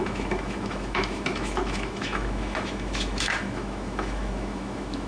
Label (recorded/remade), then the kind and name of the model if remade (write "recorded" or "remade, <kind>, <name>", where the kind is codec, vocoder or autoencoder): remade, autoencoder, DAC-VAE